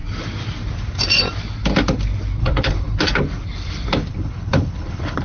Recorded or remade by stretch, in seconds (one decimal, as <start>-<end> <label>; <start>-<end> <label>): 0.0-2.4 recorded; 2.4-3.0 remade; 3.0-4.1 recorded; 4.1-5.2 remade